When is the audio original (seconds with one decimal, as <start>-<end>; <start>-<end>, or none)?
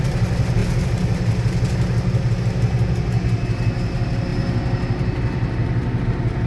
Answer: 0.0-6.5